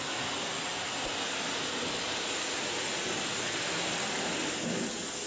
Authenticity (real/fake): real